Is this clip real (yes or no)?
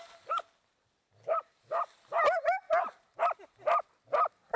yes